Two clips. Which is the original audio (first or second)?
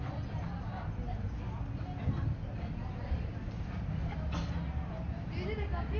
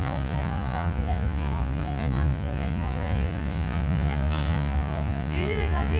first